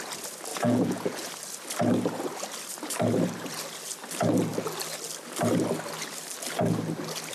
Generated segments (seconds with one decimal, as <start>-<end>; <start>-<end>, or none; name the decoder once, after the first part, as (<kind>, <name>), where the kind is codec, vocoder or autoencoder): 0.5-1.3 (vocoder, Vocos)